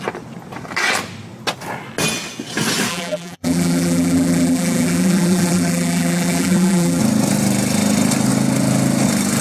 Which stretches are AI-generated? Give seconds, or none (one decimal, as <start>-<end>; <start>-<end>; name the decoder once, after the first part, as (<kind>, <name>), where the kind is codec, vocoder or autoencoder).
2.9-7.0 (vocoder, BigVGAN v2)